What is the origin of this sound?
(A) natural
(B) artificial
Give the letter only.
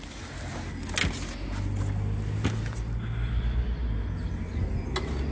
A